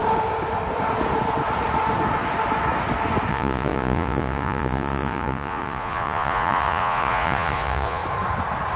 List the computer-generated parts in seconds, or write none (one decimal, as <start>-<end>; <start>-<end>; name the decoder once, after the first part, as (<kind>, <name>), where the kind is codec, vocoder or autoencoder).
3.3-8.0 (vocoder, Vocos)